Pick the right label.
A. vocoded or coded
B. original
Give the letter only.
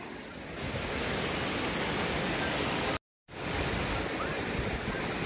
B